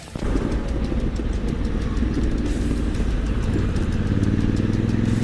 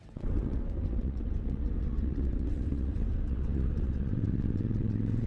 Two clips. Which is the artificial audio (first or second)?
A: second